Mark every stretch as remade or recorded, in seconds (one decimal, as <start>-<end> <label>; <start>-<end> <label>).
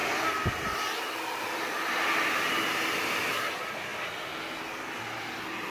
0.0-5.7 recorded